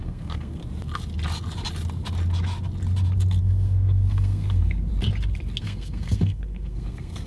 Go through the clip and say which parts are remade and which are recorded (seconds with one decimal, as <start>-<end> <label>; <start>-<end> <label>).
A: 0.0-0.6 remade; 0.6-3.4 recorded; 3.4-4.9 remade; 4.9-5.6 recorded; 5.6-7.3 remade